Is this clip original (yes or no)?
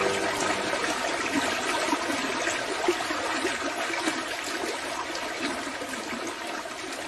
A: yes